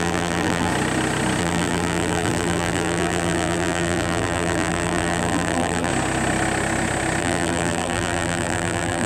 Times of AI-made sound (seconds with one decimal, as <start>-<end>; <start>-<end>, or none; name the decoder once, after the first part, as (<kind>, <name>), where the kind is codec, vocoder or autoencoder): 0.0-0.7 (vocoder, BigVGAN v2); 1.4-5.9; 7.2-9.1